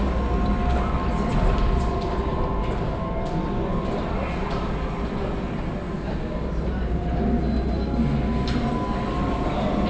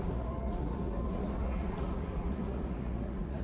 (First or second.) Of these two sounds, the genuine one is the first